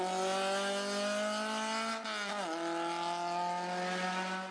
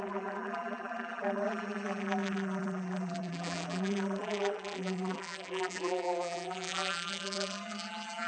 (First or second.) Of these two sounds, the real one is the first